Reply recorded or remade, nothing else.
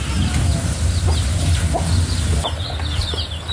recorded